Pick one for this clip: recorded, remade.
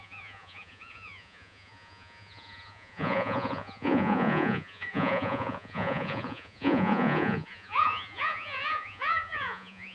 remade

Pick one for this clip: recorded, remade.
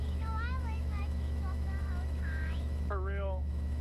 remade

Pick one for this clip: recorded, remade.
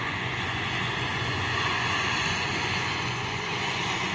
remade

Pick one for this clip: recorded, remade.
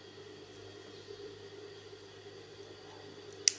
recorded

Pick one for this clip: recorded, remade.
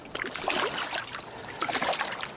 recorded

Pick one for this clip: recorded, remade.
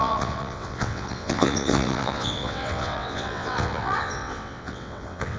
remade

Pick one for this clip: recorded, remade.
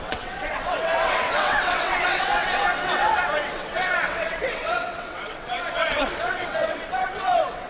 remade